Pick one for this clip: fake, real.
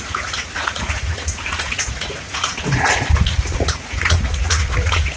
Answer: fake